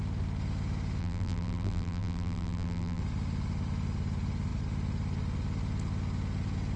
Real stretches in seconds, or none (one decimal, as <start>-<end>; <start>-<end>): 0.0-1.0; 3.0-6.8